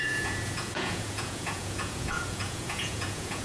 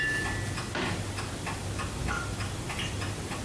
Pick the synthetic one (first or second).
first